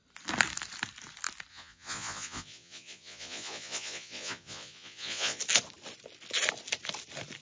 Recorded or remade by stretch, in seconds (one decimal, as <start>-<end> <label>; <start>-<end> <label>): 0.0-1.5 recorded; 1.5-5.4 remade; 5.4-7.4 recorded